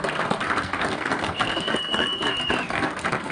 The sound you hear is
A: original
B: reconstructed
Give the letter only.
B